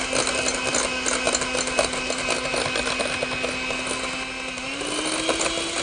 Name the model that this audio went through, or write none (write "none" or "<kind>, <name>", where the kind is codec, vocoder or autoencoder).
none